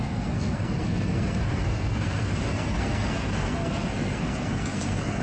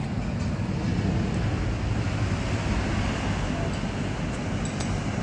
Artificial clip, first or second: first